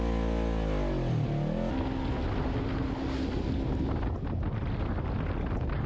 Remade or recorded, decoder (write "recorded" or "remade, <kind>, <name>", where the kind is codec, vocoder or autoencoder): recorded